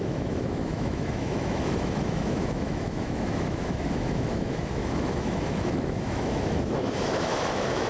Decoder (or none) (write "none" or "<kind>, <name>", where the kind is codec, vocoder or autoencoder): autoencoder, DAC-VAE